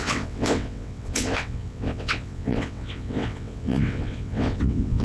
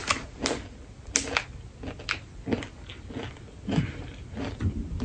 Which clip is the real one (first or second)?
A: second